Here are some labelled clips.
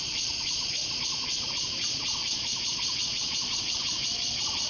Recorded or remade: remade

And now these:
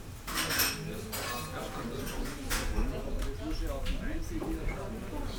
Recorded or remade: recorded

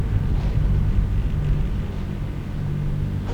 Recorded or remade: recorded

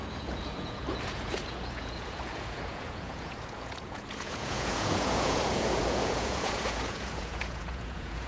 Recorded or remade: remade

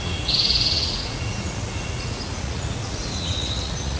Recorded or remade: remade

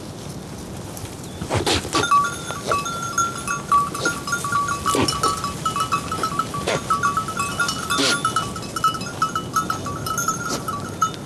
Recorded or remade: recorded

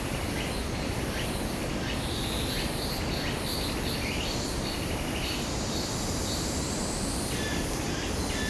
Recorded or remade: recorded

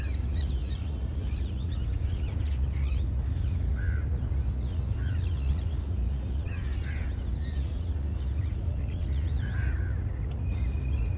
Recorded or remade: remade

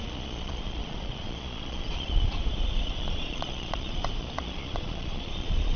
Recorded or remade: remade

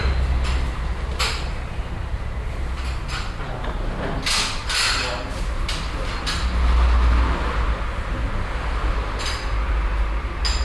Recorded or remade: recorded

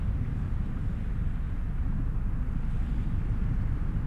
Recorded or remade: recorded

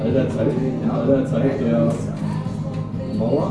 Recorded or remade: recorded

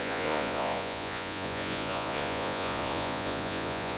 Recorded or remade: remade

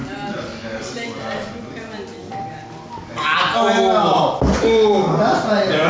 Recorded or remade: recorded